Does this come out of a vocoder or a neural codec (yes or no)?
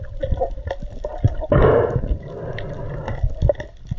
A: no